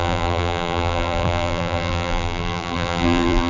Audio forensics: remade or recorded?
remade